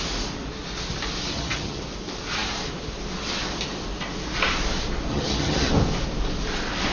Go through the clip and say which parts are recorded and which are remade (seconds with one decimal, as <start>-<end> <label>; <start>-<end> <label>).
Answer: 0.0-1.3 recorded; 1.3-1.8 remade; 1.8-5.1 recorded; 5.1-5.7 remade; 5.7-6.9 recorded